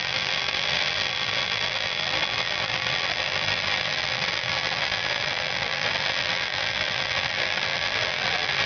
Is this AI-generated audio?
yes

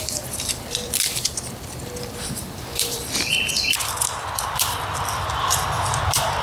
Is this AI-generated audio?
yes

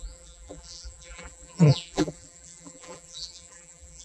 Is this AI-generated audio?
yes